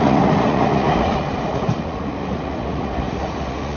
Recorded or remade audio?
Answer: remade